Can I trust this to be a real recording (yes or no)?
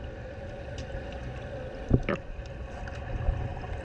yes